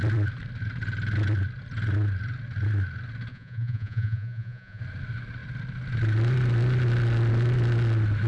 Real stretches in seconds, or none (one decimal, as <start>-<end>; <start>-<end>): 0.0-3.3; 4.8-8.3